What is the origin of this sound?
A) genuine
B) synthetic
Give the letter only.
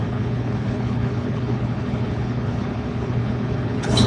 B